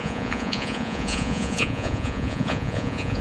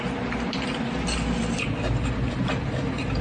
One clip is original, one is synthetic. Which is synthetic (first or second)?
first